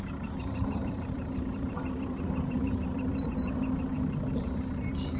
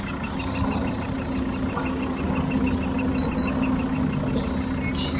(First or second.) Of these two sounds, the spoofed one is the first